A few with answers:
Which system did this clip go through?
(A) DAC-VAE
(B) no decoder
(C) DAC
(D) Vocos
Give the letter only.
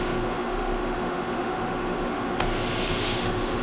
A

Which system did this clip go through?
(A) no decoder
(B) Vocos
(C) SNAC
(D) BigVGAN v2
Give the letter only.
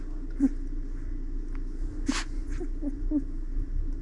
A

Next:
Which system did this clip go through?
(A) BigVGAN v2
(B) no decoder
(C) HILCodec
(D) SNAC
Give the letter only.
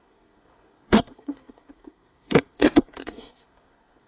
D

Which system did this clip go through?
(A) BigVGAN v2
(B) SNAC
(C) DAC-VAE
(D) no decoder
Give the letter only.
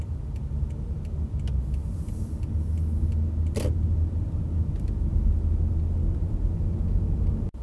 D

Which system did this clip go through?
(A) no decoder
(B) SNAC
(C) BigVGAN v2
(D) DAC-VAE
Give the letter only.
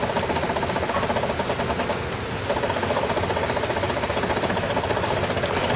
A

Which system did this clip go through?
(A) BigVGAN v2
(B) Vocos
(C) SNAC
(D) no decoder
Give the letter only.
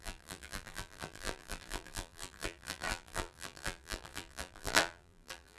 A